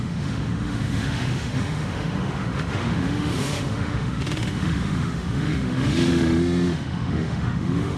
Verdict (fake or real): fake